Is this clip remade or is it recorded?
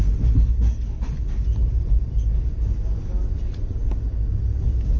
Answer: recorded